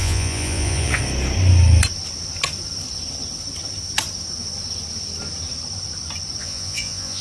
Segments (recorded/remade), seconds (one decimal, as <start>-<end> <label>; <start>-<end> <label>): 0.0-1.0 remade; 1.0-6.4 recorded; 6.4-7.2 remade